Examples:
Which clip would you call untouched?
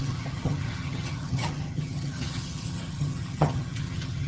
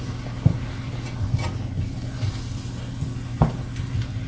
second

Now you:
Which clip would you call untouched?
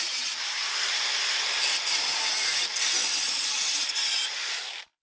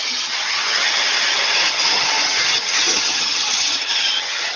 first